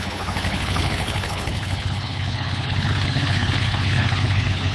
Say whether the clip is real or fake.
fake